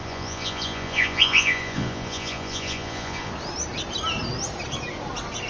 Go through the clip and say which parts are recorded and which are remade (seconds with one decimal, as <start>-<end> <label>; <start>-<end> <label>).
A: 0.0-3.3 remade; 3.3-5.5 recorded